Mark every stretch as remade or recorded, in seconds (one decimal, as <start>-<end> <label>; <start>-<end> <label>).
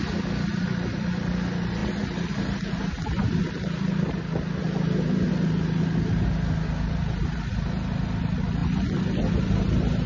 0.0-10.1 recorded